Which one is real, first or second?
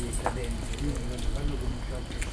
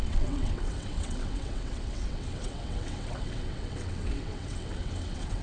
first